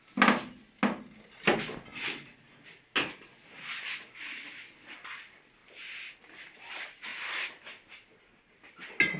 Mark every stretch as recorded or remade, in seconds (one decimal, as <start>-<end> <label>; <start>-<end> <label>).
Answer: 0.0-9.2 recorded